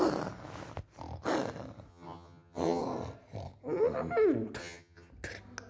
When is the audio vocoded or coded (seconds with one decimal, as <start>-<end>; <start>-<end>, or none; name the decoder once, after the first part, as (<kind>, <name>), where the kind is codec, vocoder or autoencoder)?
1.9-2.8 (vocoder, HiFi-GAN); 4.6-5.1